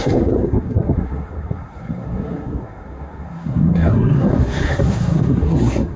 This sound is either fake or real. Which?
fake